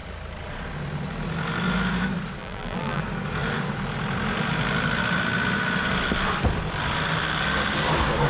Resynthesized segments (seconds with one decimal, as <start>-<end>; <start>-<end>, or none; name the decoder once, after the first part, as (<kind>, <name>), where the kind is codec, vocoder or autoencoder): 2.4-3.0 (vocoder, BigVGAN v2)